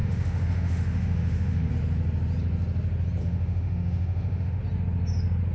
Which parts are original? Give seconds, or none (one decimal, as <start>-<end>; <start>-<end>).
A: 1.7-3.2; 4.6-5.5